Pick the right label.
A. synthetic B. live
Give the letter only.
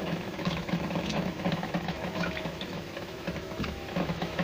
A